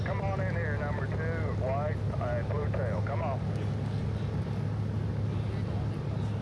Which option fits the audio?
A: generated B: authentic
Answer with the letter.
B